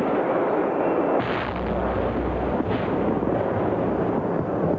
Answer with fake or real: real